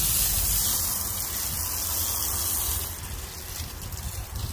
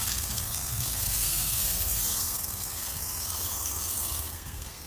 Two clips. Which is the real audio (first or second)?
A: first